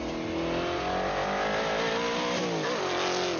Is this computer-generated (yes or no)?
no